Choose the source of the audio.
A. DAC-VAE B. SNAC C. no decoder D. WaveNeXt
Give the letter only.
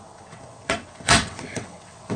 D